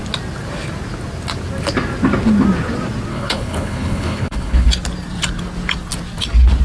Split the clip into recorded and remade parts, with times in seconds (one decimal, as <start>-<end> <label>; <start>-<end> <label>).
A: 0.0-3.1 recorded; 3.1-4.7 remade; 4.7-6.6 recorded